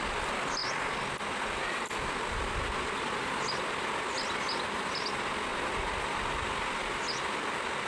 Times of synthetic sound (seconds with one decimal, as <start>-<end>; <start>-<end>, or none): none